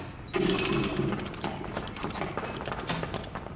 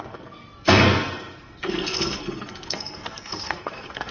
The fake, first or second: second